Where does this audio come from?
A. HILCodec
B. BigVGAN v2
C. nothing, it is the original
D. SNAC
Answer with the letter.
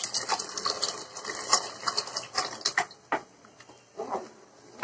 C